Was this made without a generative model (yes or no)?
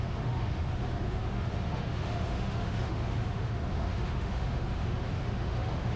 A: no